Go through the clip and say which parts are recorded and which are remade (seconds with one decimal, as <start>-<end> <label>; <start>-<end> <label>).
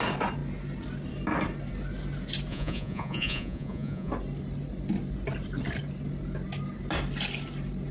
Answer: 0.0-2.5 recorded; 2.5-4.1 remade; 4.1-7.9 recorded